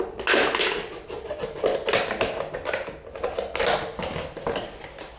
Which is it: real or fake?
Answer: real